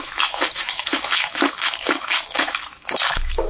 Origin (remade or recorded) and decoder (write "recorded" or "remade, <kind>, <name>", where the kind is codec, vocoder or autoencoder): remade, autoencoder, DAC-VAE